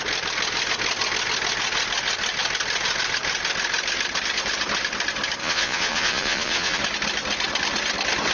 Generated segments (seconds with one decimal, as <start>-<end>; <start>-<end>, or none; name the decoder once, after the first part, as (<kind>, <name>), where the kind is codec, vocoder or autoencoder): 5.4-6.8 (vocoder, Vocos)